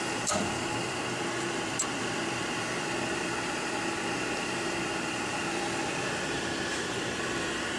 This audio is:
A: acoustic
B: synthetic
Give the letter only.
B